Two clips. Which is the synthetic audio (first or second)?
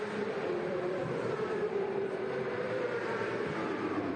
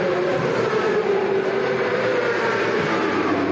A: first